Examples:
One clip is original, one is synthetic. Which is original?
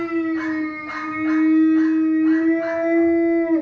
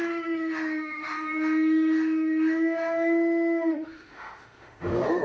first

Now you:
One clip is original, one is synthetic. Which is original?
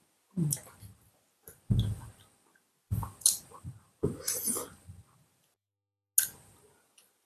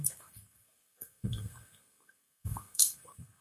first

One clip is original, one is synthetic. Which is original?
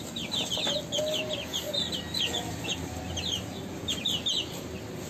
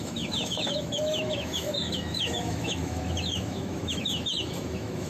first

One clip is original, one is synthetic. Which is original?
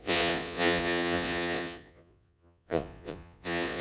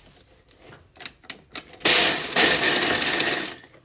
second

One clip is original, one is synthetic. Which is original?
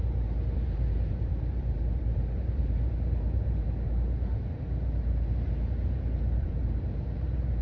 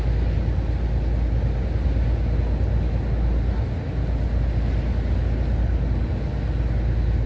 second